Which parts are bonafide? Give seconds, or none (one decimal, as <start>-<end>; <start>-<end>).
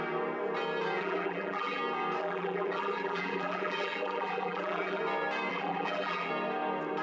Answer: 0.0-1.0; 1.8-2.2; 5.0-5.5; 6.3-7.0